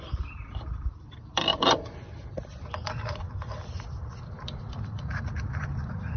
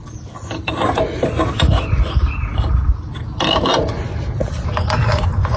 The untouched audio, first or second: second